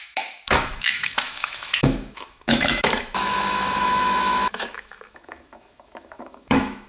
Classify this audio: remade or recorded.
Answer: remade